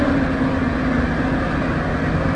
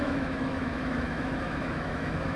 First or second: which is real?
first